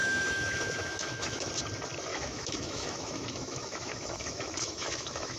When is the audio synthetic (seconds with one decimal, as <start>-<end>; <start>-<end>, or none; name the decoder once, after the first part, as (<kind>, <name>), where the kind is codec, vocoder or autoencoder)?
0.0-1.5 (autoencoder, DAC-VAE); 2.1-5.4